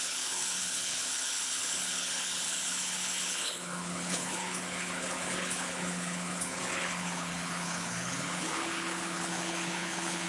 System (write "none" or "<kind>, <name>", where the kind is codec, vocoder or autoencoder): codec, HILCodec